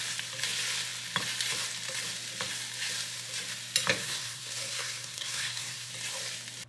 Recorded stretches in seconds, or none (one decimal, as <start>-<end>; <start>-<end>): 0.0-4.0; 5.9-6.7